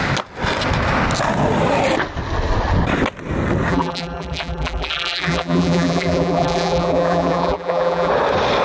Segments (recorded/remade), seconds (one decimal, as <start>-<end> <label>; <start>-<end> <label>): 0.0-3.7 recorded; 3.7-8.1 remade; 8.1-8.6 recorded